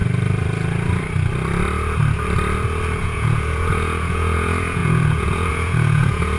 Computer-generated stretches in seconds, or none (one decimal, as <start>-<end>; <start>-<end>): 3.0-6.4